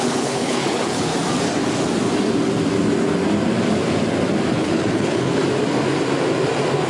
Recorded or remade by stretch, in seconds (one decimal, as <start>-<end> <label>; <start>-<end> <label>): 0.0-1.1 remade; 1.1-4.5 recorded; 4.5-5.4 remade; 5.4-6.9 recorded